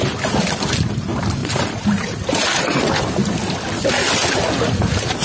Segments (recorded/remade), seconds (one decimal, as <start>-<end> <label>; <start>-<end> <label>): 0.0-1.4 recorded; 1.4-2.9 remade; 2.9-5.2 recorded